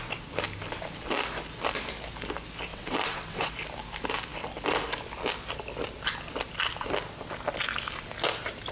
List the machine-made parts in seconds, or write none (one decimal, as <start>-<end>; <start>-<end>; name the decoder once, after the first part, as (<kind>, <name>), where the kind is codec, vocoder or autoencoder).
2.7-3.5 (vocoder, WaveNeXt)